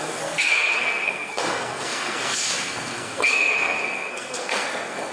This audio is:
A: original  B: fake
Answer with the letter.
B